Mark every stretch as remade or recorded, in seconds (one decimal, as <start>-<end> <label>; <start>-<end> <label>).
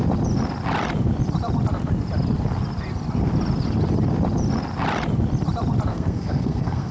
0.0-5.9 recorded; 5.9-6.9 remade